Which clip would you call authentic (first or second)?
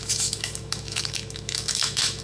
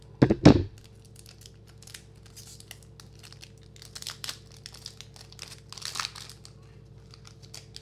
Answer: second